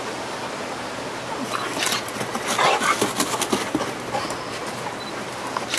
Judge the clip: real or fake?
real